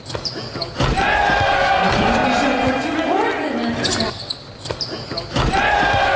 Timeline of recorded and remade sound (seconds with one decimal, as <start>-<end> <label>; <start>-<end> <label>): 0.0-6.2 recorded